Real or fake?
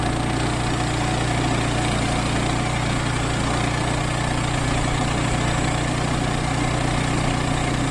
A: real